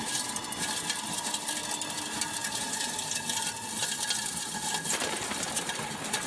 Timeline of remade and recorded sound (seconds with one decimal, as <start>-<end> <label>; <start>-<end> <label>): 0.0-6.3 recorded